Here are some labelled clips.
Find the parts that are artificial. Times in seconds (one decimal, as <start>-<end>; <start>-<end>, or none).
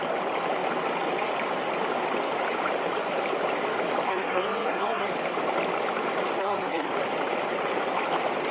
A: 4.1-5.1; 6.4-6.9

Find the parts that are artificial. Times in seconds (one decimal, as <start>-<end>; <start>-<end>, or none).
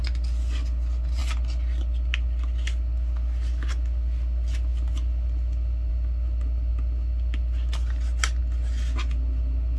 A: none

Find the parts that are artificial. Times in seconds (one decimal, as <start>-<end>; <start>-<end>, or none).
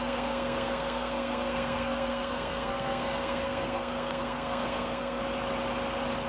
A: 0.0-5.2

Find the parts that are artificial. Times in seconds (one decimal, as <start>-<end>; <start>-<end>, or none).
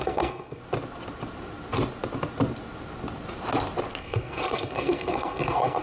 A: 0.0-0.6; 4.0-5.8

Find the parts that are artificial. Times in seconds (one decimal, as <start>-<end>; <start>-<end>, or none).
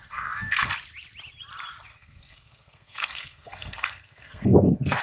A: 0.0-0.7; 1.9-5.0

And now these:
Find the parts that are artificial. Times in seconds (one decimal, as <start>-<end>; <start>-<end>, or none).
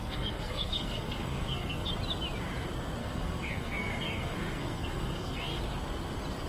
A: 0.0-1.9; 3.0-5.6